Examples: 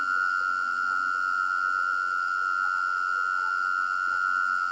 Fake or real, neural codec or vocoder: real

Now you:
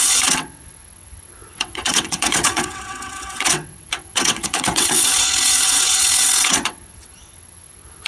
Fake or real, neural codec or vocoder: fake, vocoder, WaveNeXt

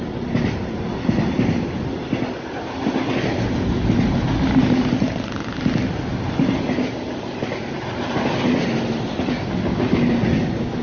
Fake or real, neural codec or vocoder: real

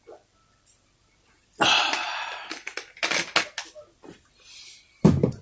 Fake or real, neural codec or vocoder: real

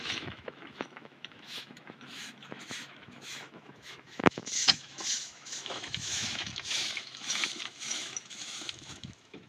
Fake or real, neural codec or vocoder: fake, autoencoder, DAC-VAE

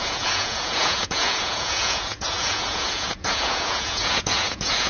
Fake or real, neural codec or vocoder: fake, vocoder, Vocos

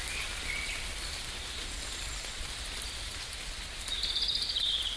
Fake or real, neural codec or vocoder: real